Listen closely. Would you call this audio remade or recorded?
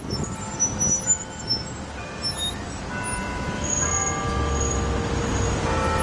recorded